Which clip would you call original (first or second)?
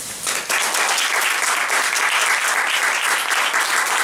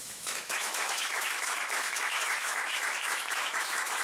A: first